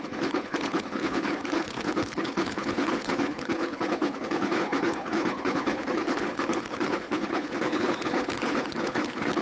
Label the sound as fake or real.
fake